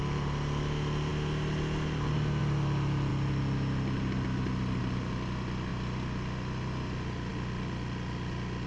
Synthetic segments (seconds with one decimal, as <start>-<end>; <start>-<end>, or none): none